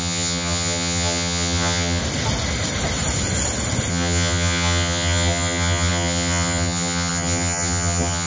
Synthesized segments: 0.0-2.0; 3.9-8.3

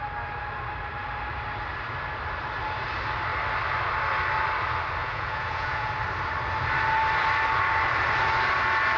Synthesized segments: 5.0-5.9

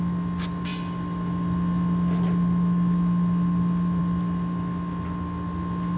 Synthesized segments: none

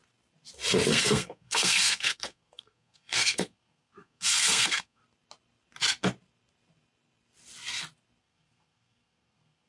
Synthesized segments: 0.9-5.0; 8.2-9.7

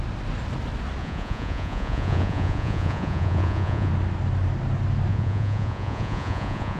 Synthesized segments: 1.0-3.9; 5.1-6.8